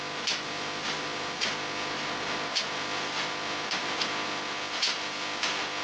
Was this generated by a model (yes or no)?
no